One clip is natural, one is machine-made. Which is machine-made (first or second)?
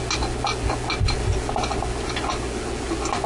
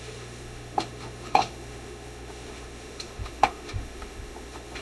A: second